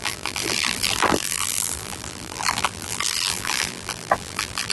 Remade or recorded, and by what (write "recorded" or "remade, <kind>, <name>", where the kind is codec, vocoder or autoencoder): remade, vocoder, BigVGAN v2